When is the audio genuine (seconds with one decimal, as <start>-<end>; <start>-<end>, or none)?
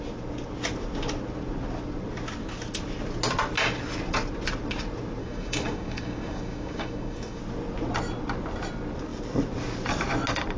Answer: 0.0-5.2; 7.4-10.6